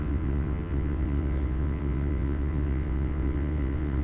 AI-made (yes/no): yes